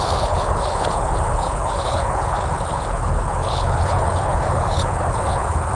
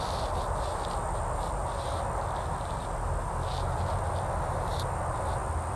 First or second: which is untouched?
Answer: second